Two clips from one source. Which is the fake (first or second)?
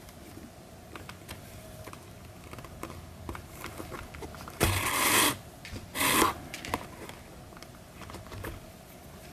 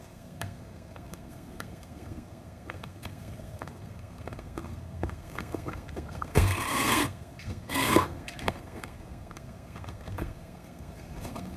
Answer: second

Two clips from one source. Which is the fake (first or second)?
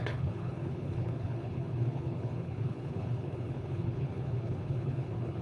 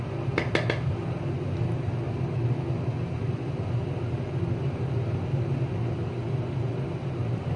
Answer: first